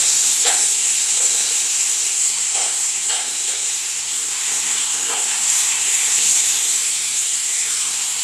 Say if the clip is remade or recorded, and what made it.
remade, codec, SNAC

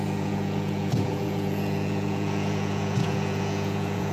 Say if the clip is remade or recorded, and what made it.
remade, vocoder, Vocos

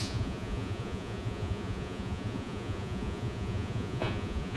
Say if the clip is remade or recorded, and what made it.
remade, vocoder, Vocos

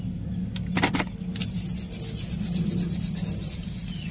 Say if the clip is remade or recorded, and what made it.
recorded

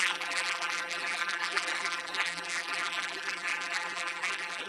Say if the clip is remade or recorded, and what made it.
remade, vocoder, BigVGAN v2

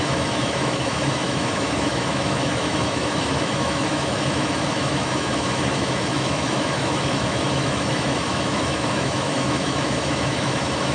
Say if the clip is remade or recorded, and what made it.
remade, autoencoder, DAC-VAE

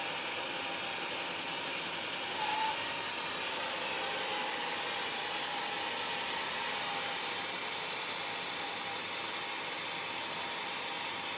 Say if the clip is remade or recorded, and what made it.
recorded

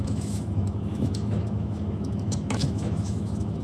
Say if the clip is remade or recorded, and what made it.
remade, autoencoder, DAC-VAE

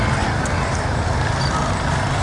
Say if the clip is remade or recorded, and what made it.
recorded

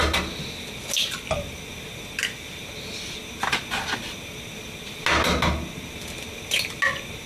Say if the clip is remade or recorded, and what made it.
recorded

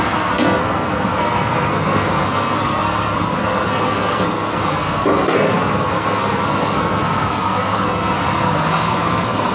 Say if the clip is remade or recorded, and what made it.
remade, codec, SNAC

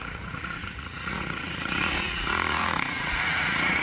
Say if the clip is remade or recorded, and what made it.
remade, vocoder, Vocos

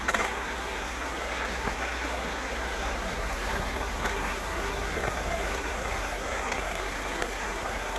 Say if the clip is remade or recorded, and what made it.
remade, codec, SNAC